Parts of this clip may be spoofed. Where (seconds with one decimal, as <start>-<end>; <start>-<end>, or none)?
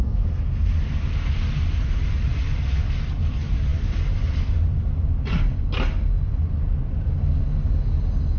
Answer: 0.0-0.7